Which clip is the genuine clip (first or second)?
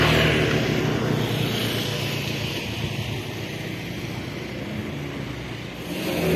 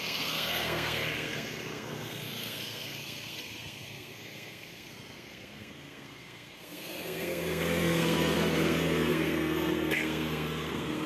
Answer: first